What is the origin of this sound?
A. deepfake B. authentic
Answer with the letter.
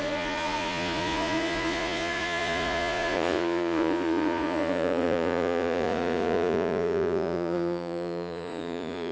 A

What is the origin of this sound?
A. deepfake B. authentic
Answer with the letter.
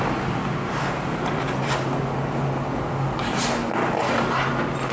B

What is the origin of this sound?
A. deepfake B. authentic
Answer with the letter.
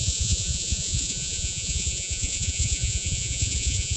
A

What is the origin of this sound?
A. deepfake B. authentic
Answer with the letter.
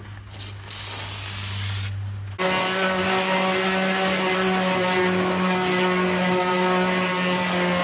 B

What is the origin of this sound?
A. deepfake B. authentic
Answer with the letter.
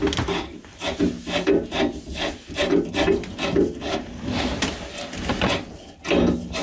B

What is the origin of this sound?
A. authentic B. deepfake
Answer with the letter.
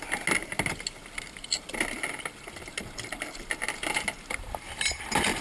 A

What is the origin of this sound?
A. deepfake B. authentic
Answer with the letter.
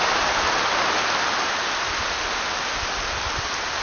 B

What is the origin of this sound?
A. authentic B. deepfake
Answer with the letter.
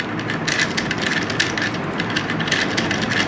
A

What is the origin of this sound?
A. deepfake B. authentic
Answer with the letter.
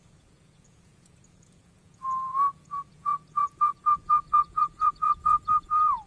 A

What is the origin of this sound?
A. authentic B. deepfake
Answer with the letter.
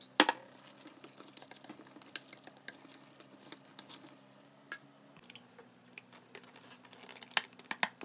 A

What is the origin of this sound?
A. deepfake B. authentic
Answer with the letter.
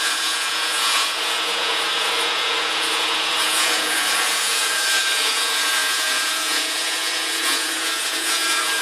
A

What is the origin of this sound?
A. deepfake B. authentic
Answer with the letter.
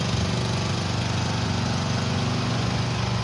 A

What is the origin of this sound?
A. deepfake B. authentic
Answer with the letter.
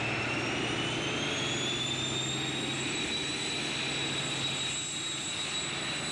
B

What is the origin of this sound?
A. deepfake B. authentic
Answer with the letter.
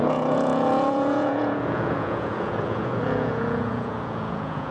A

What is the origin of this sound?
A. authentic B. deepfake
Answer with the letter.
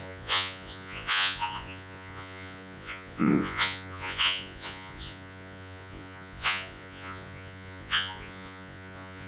B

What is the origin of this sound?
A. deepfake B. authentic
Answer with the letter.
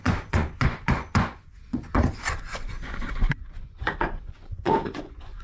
A